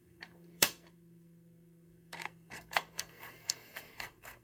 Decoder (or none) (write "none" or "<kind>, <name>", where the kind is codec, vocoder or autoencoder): codec, SNAC